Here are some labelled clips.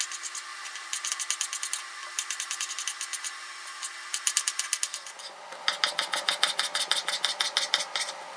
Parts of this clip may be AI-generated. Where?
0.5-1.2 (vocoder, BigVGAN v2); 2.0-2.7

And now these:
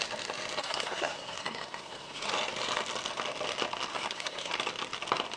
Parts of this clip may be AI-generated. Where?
0.6-2.3 (codec, SNAC); 3.9-4.5